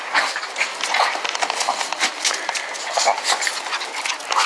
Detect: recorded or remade recorded